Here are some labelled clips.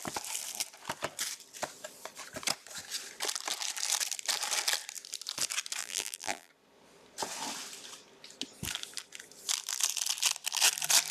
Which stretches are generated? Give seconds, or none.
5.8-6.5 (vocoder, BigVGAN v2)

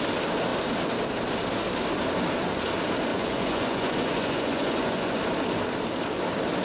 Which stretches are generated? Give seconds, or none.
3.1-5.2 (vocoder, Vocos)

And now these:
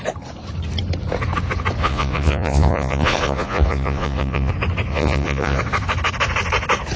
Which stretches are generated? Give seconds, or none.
1.8-4.5 (vocoder, Vocos); 4.9-5.6

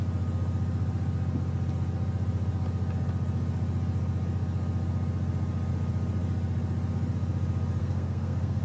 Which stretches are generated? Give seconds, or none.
7.8-8.6 (codec, SNAC)

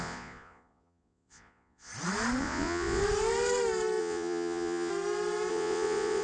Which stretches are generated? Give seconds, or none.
0.0-1.9 (vocoder, Vocos); 2.4-3.0; 4.0-4.9; 5.5-6.2

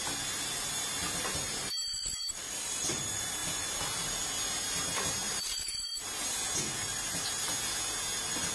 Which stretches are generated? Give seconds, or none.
none